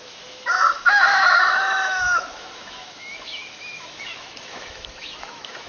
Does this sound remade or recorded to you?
remade